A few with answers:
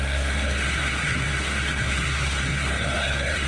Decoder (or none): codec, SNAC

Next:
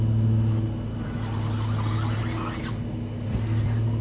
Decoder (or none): none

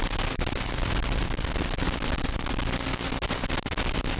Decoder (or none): none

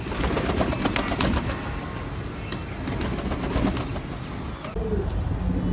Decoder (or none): none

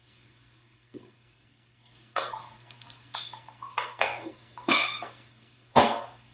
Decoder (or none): codec, SNAC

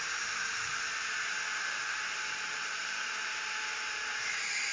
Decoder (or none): vocoder, BigVGAN v2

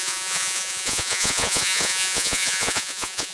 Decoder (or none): vocoder, Vocos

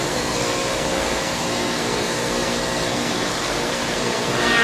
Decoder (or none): codec, SNAC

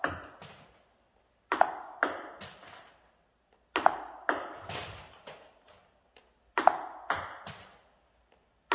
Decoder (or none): none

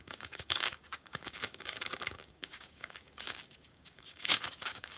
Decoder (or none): codec, DAC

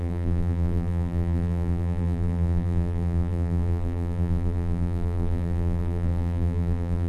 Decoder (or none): vocoder, BigVGAN v2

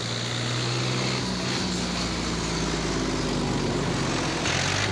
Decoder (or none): none